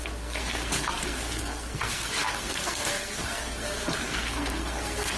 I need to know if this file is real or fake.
fake